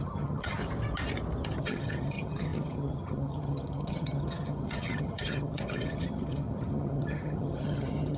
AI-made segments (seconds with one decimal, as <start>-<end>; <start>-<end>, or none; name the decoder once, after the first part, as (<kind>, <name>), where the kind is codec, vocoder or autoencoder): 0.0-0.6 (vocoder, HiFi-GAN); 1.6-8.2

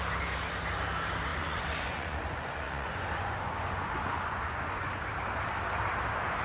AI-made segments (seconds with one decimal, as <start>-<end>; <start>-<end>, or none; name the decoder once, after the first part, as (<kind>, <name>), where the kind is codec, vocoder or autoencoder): 1.3-5.0 (vocoder, Vocos)

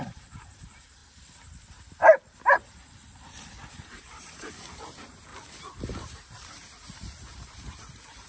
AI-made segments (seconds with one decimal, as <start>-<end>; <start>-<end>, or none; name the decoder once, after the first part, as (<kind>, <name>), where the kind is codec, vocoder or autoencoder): 0.0-1.0 (vocoder, BigVGAN v2); 3.7-5.3; 5.8-8.3

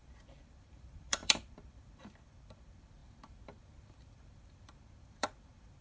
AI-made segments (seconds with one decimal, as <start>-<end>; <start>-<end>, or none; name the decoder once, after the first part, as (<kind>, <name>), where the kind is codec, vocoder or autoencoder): 0.0-5.8 (vocoder, BigVGAN v2)

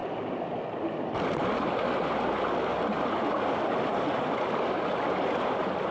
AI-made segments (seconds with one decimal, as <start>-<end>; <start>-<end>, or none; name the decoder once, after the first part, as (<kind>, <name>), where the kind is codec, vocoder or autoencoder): none

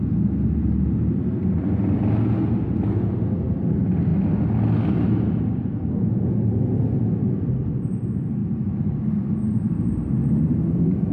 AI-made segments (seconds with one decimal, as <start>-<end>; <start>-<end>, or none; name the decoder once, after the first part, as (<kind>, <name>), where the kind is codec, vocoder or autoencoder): 8.4-9.7 (vocoder, BigVGAN v2)

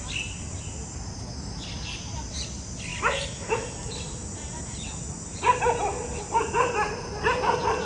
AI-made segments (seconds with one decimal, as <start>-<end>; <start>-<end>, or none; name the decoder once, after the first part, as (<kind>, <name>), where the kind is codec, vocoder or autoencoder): none